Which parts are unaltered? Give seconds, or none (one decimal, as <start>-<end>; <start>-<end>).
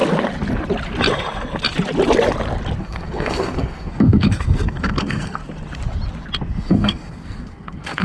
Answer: 0.0-2.8; 5.4-6.5